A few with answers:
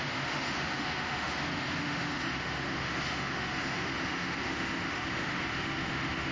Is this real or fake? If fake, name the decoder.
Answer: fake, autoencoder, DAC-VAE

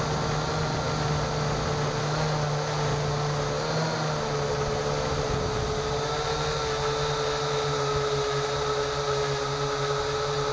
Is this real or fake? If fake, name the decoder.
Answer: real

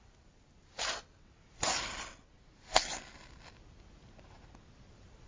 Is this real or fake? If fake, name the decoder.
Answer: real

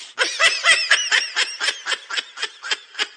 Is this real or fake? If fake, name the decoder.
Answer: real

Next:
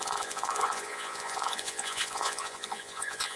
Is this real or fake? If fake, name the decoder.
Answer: fake, vocoder, Vocos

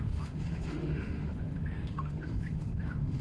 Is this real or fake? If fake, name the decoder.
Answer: fake, autoencoder, DAC-VAE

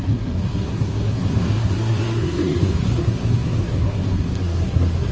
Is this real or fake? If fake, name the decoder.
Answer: fake, codec, SNAC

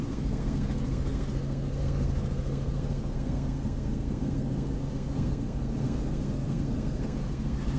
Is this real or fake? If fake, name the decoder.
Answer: fake, codec, SNAC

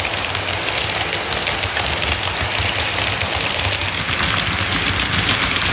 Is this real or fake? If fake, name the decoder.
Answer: real